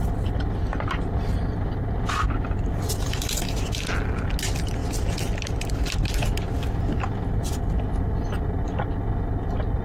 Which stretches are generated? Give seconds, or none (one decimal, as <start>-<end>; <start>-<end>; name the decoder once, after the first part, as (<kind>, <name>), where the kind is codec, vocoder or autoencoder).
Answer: none